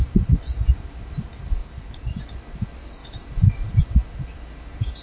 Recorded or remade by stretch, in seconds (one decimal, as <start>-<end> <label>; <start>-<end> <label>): 0.0-0.7 remade; 0.7-1.6 recorded; 1.6-2.2 remade; 2.2-5.0 recorded